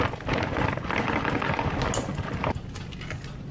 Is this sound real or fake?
real